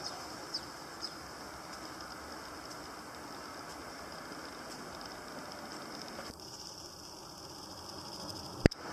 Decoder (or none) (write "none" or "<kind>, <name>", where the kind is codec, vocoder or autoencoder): none